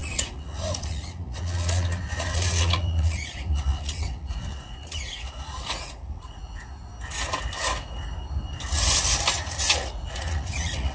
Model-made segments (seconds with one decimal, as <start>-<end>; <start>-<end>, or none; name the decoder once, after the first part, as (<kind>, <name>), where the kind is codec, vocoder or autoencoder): 0.0-6.9 (vocoder, Vocos); 9.3-10.9